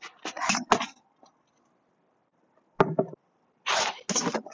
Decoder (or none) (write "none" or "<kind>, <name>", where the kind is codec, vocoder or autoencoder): none